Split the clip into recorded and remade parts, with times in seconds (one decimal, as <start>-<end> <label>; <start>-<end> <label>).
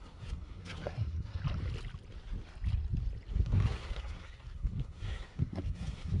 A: 0.0-1.4 remade; 1.4-3.3 recorded; 3.3-6.2 remade